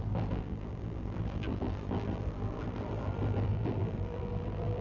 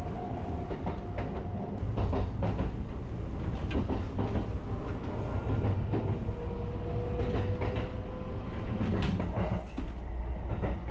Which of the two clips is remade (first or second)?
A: first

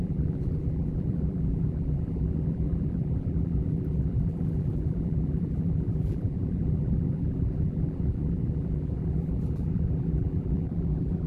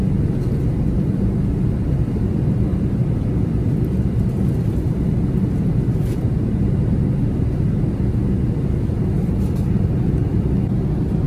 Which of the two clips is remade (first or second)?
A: first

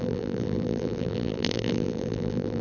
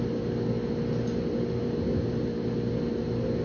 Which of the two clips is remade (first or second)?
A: first